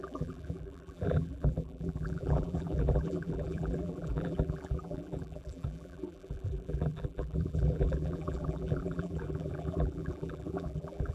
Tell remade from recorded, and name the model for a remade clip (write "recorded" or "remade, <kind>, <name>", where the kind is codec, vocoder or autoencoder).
remade, vocoder, BigVGAN v2